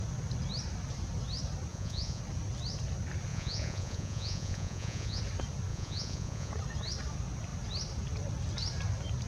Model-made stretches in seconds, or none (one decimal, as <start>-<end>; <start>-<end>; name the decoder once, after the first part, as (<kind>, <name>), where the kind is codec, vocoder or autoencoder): 1.7-2.2 (vocoder, Vocos); 3.3-5.2; 5.7-6.5

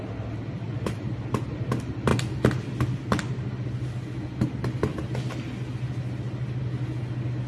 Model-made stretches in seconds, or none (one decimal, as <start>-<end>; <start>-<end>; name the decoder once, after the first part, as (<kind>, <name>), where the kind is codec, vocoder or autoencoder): none

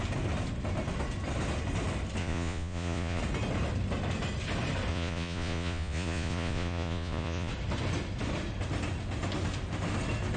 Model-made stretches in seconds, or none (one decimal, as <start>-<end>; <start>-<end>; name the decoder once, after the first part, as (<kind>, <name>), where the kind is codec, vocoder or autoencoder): 2.2-3.2 (vocoder, Vocos); 4.9-7.5

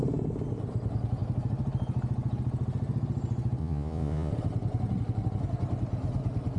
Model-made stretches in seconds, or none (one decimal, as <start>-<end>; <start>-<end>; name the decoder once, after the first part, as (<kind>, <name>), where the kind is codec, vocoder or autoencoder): 3.6-4.3 (vocoder, Vocos)

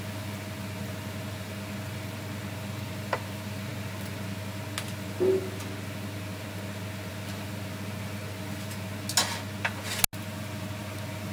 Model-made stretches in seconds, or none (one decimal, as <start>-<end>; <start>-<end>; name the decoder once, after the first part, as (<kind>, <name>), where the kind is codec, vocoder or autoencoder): none

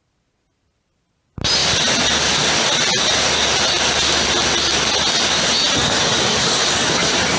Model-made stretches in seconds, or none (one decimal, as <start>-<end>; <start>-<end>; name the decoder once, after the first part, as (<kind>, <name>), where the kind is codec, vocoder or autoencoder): none

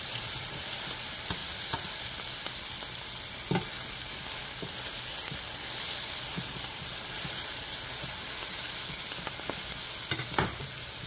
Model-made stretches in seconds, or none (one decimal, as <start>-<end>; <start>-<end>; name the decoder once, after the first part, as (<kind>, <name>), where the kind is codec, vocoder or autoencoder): 1.4-2.0 (vocoder, Vocos)

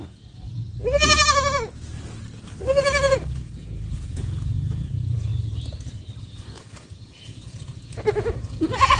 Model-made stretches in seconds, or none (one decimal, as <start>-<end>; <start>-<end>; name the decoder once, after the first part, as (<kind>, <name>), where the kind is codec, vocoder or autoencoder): 0.0-0.6 (vocoder, Vocos); 3.1-5.3; 6.2-9.0